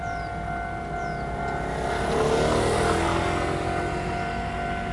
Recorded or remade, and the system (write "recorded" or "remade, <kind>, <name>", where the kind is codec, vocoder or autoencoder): recorded